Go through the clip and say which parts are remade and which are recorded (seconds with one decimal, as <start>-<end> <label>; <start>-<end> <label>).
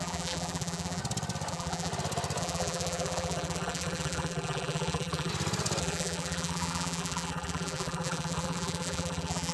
0.0-1.0 remade; 1.0-1.5 recorded; 1.5-1.9 remade; 1.9-2.4 recorded; 2.4-5.3 remade; 5.3-5.8 recorded; 5.8-9.5 remade